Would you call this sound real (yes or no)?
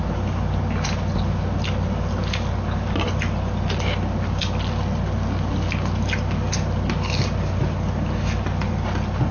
yes